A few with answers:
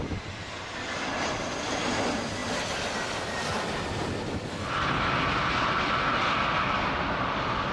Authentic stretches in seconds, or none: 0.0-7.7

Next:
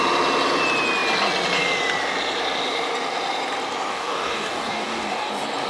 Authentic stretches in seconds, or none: 0.0-3.9; 5.3-5.7

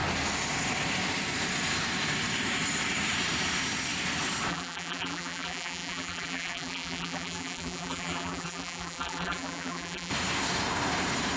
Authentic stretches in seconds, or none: 0.0-4.5; 10.1-11.4

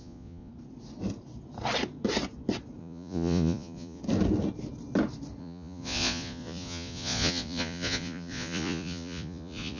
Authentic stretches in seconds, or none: 0.5-2.8; 4.0-5.4

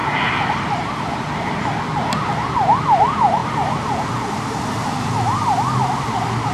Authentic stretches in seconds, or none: 0.0-6.5

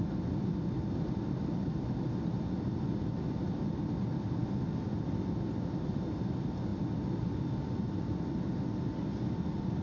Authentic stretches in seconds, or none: 0.0-9.8

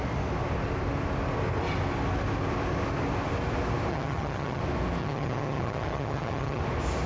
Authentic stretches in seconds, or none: 0.0-3.9; 4.6-5.0; 6.6-7.1